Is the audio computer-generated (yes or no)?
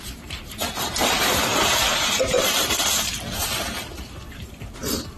yes